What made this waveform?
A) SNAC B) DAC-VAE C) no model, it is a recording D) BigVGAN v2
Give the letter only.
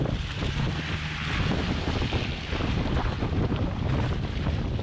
C